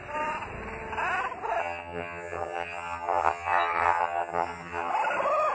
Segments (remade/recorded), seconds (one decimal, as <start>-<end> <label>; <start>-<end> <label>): 0.0-1.6 recorded; 1.6-4.9 remade; 4.9-5.5 recorded